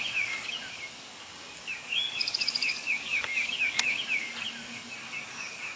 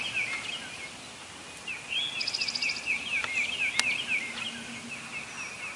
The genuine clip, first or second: second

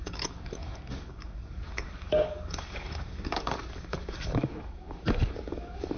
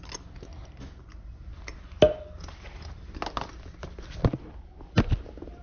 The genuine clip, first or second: second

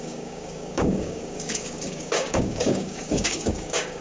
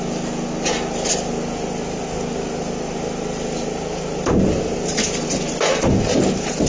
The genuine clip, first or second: second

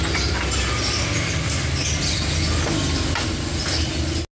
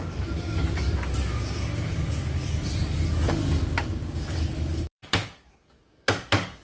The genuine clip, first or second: first